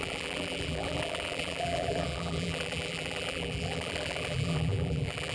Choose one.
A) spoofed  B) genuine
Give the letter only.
A